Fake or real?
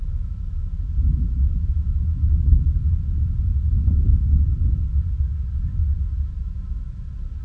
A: real